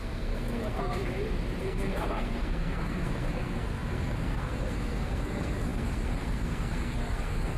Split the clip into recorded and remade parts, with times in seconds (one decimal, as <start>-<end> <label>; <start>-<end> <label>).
0.0-1.0 remade; 1.0-1.6 recorded; 1.6-7.6 remade